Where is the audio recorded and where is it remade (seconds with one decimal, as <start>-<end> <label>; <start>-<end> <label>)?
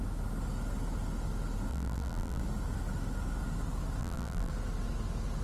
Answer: 0.0-1.7 recorded; 1.7-2.4 remade; 2.4-4.0 recorded; 4.0-4.5 remade; 4.5-5.4 recorded